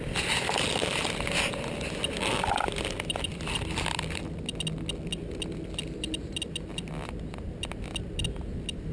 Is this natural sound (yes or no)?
yes